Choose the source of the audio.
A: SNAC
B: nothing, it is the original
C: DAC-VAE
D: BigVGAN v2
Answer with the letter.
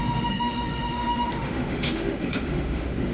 C